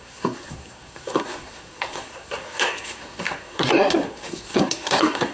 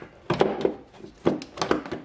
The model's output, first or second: first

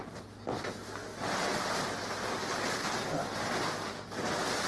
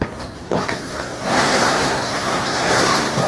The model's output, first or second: second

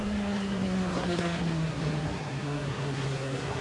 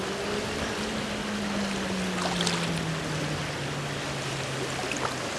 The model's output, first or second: first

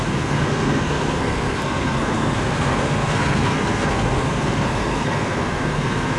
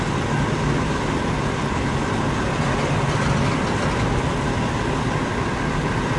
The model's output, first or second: first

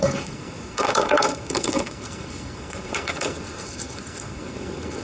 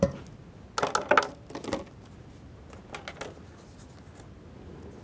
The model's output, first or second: first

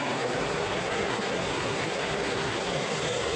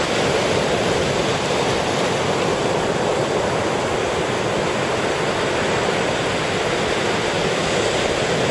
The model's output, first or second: first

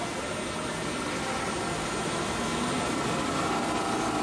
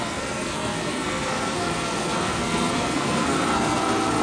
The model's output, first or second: second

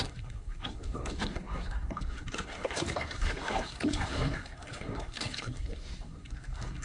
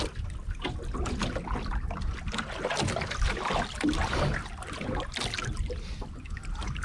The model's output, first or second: first